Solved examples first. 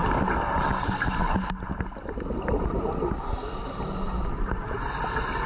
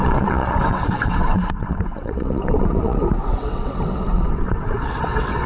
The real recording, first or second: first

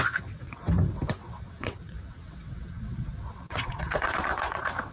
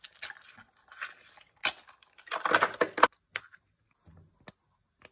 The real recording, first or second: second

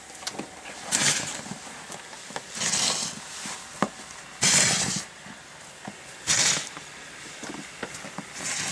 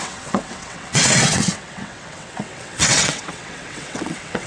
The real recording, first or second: first